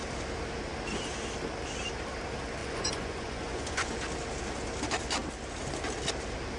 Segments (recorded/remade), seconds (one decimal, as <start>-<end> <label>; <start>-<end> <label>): 0.0-2.6 recorded; 2.6-4.0 remade; 4.0-6.6 recorded